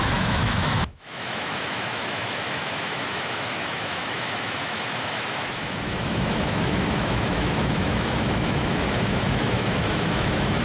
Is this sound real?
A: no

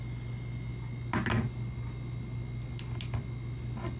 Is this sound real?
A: yes